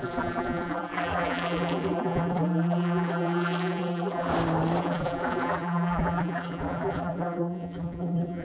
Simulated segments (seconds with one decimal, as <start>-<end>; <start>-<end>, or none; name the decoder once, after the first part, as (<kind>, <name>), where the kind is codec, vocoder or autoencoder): 0.0-4.3 (vocoder, BigVGAN v2); 4.8-8.4